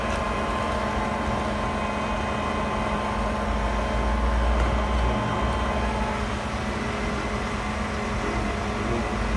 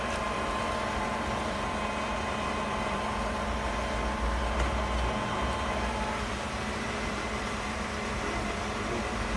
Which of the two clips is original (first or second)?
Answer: first